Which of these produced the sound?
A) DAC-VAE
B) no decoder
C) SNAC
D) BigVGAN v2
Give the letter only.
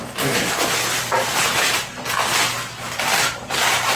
B